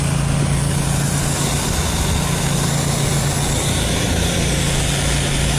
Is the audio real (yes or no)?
yes